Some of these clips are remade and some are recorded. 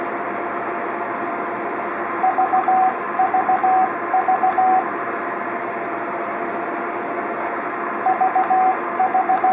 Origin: recorded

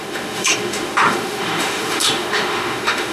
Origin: remade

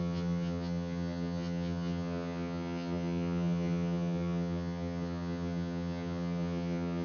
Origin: remade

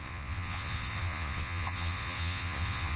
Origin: remade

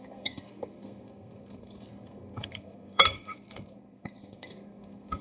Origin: remade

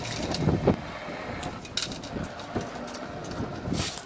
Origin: recorded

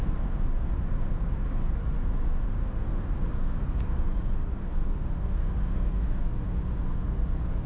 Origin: recorded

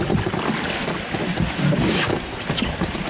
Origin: recorded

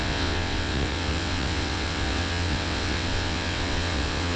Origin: remade